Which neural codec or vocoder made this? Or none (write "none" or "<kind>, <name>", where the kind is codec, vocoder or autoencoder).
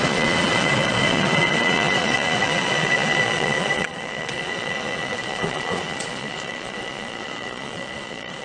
vocoder, Vocos